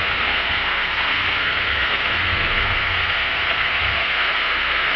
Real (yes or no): no